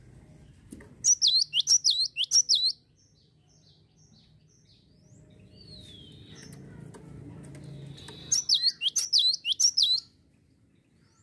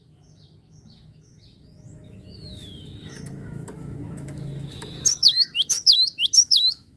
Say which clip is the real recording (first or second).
first